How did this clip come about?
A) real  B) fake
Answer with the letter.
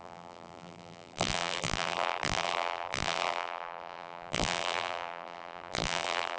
B